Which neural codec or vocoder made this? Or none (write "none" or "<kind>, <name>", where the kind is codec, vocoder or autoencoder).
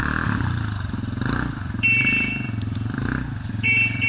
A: vocoder, BigVGAN v2